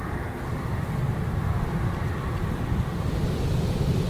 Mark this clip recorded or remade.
recorded